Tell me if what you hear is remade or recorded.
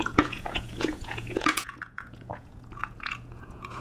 remade